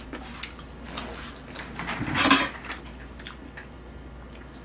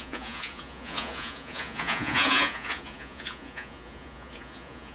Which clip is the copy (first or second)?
second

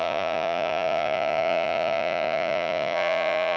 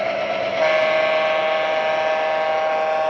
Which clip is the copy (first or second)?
first